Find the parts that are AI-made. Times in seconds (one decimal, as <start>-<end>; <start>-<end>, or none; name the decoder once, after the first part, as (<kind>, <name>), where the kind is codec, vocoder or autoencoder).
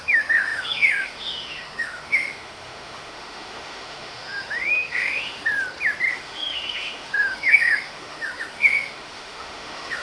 0.0-5.5 (autoencoder, DAC-VAE); 6.1-10.0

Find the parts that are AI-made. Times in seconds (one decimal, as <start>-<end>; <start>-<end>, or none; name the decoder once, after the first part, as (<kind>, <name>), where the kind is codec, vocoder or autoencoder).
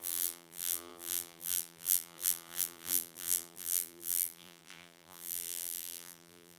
0.0-6.6 (vocoder, BigVGAN v2)